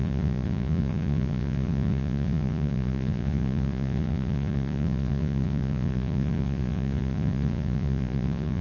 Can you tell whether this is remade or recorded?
remade